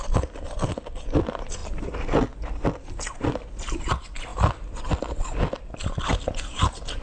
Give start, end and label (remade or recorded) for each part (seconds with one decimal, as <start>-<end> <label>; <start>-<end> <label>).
0.0-7.0 recorded